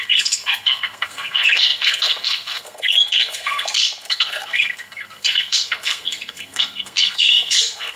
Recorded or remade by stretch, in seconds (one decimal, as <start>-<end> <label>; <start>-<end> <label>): 0.0-8.0 remade